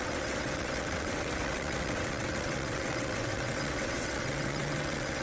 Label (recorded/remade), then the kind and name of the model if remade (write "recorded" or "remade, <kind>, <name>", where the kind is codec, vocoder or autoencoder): remade, vocoder, WaveNeXt